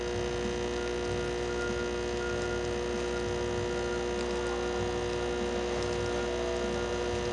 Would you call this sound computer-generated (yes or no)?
no